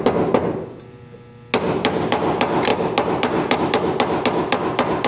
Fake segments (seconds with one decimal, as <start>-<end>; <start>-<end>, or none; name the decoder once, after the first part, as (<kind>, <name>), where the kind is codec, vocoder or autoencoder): none